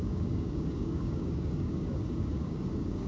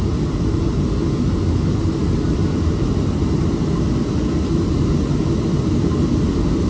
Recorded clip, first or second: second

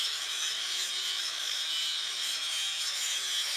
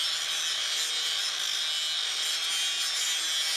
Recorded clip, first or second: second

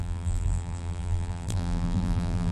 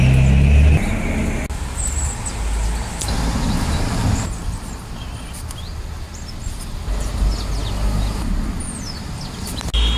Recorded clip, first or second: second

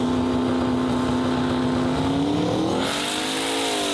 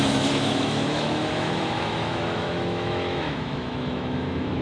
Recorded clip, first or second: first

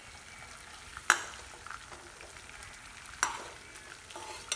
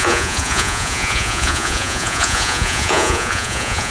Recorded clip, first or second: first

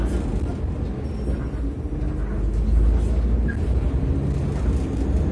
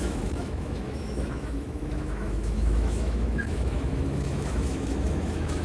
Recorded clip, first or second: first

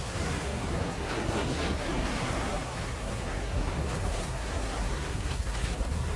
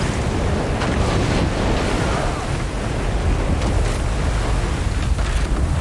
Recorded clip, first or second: second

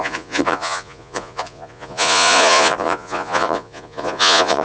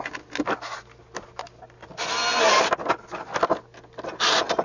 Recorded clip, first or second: second